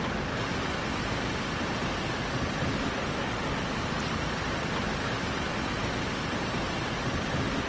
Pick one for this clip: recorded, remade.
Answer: recorded